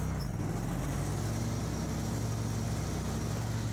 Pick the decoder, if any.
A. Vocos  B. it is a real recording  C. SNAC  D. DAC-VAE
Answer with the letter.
B